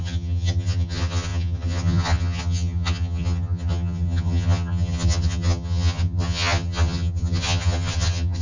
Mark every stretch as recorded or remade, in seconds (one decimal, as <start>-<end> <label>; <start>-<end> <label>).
0.0-8.4 remade